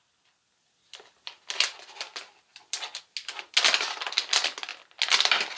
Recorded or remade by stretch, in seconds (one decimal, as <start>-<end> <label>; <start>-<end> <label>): 0.0-5.6 recorded